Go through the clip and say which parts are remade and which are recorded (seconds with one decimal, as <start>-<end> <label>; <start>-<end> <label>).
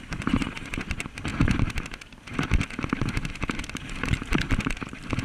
0.0-1.3 remade; 1.3-3.1 recorded; 3.1-5.2 remade